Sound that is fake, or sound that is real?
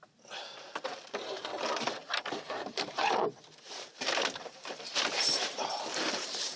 fake